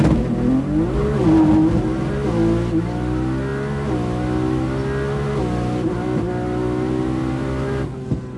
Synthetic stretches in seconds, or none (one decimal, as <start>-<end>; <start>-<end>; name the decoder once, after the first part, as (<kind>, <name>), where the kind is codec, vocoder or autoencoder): none